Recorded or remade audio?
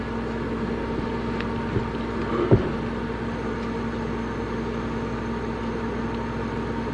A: recorded